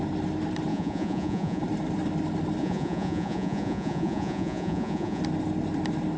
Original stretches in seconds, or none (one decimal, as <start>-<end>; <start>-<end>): 0.0-0.7; 1.6-2.6; 5.2-6.2